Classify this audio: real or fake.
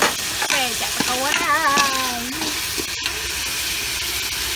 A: real